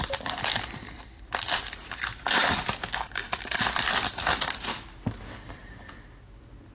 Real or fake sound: real